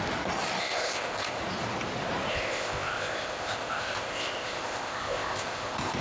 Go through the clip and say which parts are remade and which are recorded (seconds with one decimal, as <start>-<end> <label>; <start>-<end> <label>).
0.0-0.6 recorded; 0.6-1.4 remade; 1.4-2.3 recorded; 2.3-6.0 remade